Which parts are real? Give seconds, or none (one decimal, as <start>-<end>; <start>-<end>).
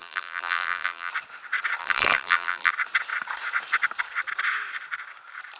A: 1.1-1.8; 2.7-5.6